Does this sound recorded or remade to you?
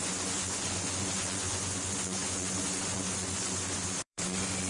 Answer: remade